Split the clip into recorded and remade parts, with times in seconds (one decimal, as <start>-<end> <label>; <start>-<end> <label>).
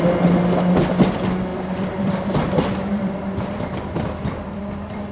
0.0-1.5 recorded; 1.5-4.6 remade; 4.6-5.1 recorded